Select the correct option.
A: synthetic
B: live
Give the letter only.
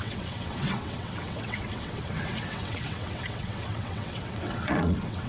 A